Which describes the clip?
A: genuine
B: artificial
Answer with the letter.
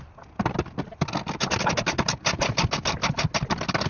A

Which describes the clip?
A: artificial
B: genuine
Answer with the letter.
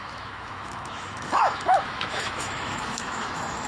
A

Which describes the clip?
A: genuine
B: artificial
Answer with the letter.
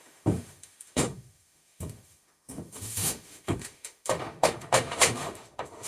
B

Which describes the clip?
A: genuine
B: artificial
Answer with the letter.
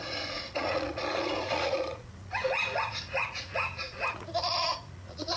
B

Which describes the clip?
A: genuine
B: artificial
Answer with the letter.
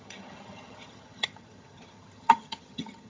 B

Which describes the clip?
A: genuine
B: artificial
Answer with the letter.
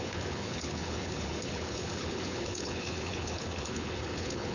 B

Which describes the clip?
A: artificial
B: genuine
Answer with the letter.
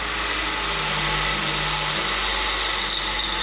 B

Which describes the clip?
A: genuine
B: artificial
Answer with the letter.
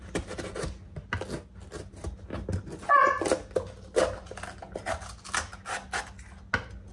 A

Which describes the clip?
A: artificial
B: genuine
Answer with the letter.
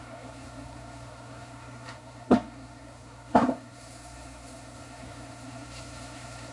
A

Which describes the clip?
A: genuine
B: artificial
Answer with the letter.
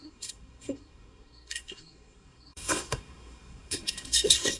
B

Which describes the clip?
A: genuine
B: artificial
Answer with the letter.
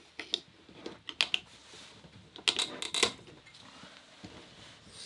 A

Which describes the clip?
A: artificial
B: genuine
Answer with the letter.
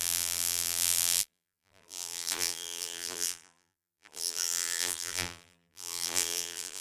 A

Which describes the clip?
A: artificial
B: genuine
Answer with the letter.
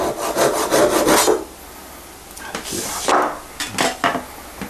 B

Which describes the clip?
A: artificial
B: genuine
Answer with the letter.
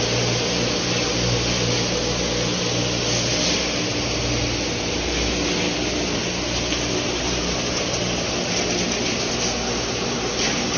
B